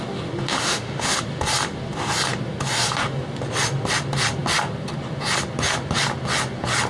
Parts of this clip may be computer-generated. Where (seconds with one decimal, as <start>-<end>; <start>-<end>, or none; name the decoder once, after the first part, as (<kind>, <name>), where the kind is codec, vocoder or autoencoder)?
0.5-1.2 (autoencoder, DAC-VAE)